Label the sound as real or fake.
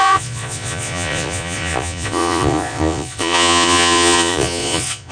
fake